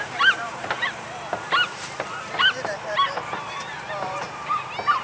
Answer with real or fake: fake